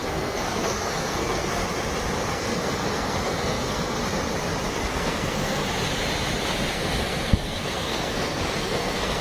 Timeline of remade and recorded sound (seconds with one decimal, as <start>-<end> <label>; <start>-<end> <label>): 0.0-1.6 remade; 1.6-2.3 recorded; 2.3-4.0 remade; 4.0-4.7 recorded; 4.7-5.6 remade; 5.6-6.7 recorded; 6.7-9.2 remade